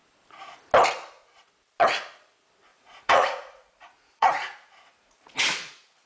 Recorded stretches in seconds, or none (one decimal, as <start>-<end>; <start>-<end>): 0.0-2.7